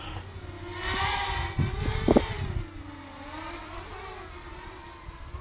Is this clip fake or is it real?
real